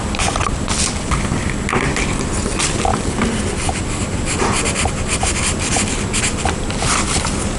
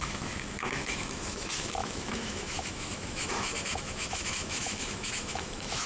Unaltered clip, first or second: first